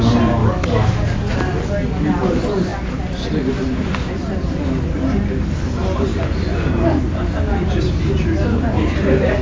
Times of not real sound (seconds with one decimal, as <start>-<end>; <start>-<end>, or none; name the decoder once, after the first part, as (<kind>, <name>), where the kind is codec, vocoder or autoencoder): 0.4-1.3 (codec, DAC)